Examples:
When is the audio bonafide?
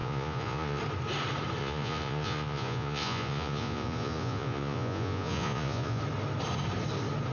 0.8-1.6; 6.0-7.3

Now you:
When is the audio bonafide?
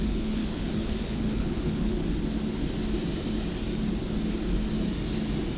2.0-5.6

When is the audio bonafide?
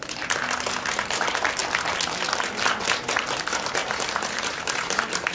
0.0-3.8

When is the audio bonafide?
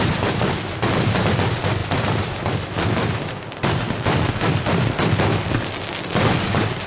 none